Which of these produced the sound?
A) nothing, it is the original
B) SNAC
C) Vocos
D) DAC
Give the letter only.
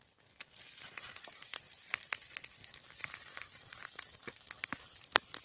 A